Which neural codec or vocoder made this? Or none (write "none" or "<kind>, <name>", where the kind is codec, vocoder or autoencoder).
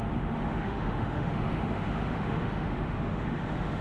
autoencoder, DAC-VAE